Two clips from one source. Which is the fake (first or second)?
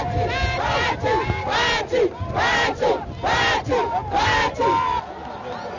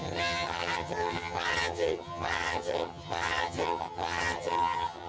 second